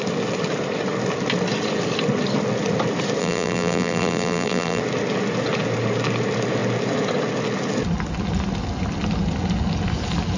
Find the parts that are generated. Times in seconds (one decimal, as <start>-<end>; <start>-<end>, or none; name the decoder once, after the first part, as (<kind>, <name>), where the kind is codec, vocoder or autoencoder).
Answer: 3.2-4.8 (vocoder, BigVGAN v2)